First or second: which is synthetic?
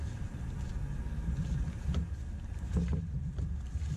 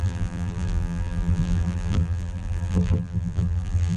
second